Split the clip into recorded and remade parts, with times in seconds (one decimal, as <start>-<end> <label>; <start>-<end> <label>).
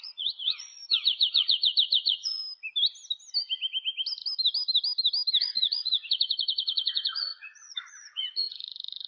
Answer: 0.0-2.4 remade; 2.4-5.4 recorded; 5.4-9.1 remade